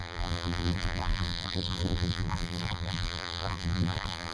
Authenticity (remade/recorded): remade